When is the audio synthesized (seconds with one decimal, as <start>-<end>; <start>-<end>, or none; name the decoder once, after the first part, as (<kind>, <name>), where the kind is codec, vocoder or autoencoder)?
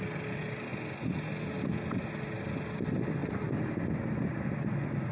none